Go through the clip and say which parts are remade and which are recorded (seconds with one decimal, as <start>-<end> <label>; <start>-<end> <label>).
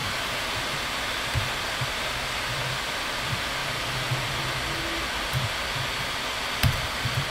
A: 0.0-1.8 remade; 1.8-3.6 recorded; 3.6-4.5 remade; 4.5-7.3 recorded